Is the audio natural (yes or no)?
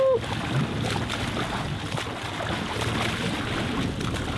yes